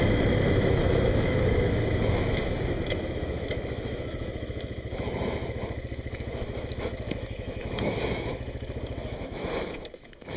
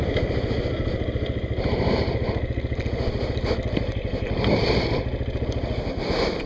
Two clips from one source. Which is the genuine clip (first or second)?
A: second